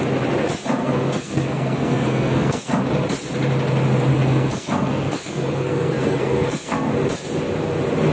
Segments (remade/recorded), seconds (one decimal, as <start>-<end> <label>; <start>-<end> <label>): 0.0-0.8 recorded; 0.8-2.8 remade; 2.8-4.1 recorded; 4.1-6.9 remade; 6.9-8.1 recorded